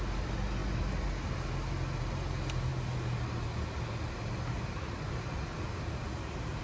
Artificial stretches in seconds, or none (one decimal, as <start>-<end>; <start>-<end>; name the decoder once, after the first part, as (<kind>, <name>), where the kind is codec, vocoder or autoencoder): none